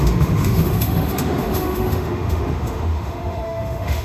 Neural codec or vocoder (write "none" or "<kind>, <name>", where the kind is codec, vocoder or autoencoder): autoencoder, DAC-VAE